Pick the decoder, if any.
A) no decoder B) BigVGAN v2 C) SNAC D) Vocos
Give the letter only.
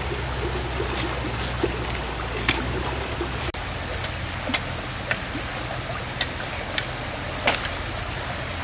A